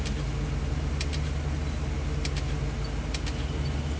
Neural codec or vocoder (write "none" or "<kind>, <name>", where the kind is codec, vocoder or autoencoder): none